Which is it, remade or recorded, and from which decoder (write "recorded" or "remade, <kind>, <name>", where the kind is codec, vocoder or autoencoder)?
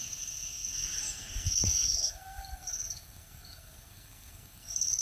remade, codec, SNAC